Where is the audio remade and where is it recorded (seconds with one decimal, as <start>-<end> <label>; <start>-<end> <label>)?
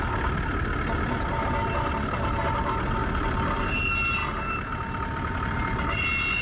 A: 0.0-3.0 recorded; 3.0-3.6 remade; 3.6-6.4 recorded